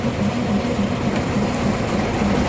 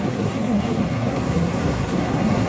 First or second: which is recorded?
first